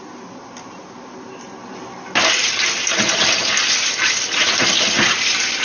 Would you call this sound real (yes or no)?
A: yes